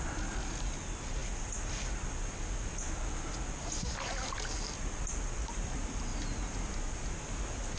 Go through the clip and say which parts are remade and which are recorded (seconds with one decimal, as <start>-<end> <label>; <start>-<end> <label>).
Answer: 0.0-7.8 recorded